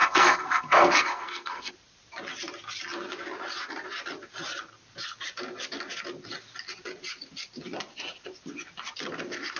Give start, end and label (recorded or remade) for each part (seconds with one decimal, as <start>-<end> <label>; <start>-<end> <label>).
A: 0.0-1.7 remade; 1.7-9.6 recorded